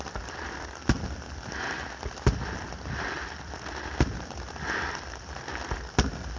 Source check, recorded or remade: recorded